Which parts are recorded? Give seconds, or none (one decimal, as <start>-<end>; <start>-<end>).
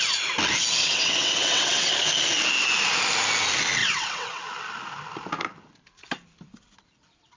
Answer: 0.0-0.8; 1.9-3.8; 4.4-7.4